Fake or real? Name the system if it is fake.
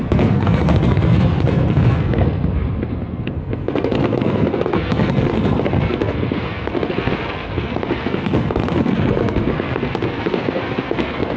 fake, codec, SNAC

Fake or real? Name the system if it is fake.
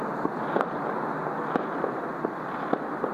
real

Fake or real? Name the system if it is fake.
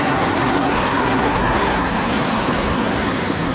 fake, codec, SNAC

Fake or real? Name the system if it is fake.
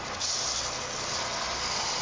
real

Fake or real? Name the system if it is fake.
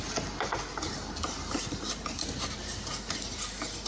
real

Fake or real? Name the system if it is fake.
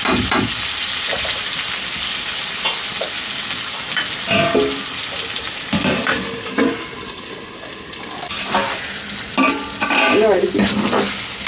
real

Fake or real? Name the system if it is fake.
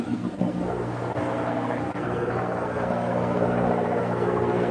fake, codec, SNAC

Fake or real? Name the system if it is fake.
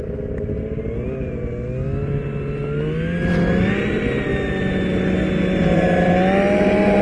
real